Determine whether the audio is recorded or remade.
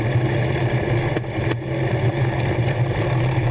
recorded